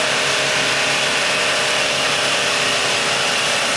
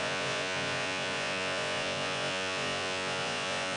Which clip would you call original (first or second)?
first